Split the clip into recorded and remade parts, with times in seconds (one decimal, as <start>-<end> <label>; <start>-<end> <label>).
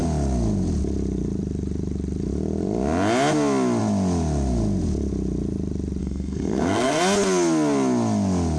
0.0-6.0 recorded; 6.0-7.0 remade; 7.0-8.6 recorded